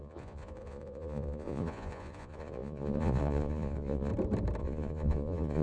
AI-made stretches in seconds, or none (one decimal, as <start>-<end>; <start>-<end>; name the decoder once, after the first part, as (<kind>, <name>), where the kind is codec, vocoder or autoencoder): 0.0-4.1 (vocoder, Vocos); 4.6-5.6